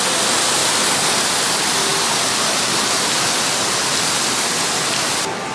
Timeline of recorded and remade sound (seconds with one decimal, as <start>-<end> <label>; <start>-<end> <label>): 0.0-5.5 recorded